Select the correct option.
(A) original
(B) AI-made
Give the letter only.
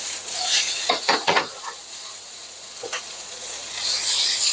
B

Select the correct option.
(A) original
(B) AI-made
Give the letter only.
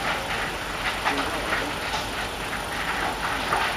A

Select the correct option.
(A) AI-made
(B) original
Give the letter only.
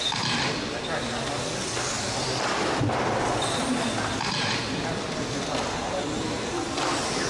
B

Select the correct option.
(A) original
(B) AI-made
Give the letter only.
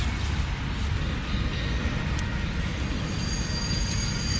A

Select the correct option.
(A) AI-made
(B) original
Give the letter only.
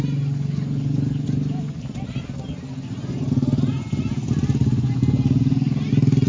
B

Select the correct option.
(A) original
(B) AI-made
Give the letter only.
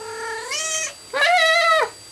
A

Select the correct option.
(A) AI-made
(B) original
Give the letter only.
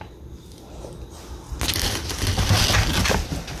B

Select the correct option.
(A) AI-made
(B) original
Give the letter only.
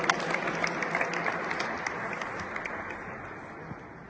B